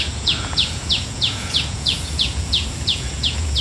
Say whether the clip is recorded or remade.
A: remade